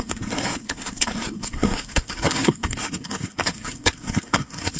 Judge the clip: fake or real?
fake